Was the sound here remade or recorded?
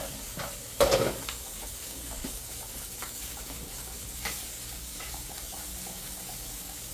remade